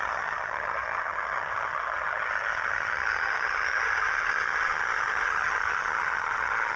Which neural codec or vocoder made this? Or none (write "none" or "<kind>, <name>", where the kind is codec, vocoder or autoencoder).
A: vocoder, HiFi-GAN